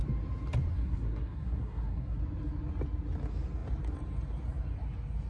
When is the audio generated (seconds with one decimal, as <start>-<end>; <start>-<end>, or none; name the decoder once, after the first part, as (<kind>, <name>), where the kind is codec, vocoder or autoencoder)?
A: 0.7-2.2 (codec, SNAC)